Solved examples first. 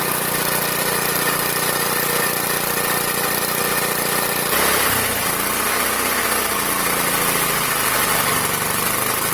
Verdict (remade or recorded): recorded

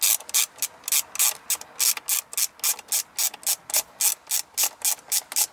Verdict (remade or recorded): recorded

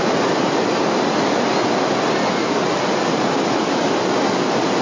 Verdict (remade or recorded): recorded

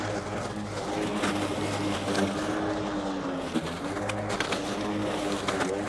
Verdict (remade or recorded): recorded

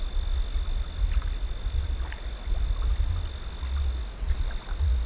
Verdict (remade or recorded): recorded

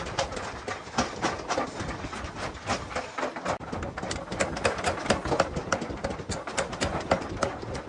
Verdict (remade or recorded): recorded